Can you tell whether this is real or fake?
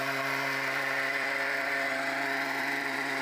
fake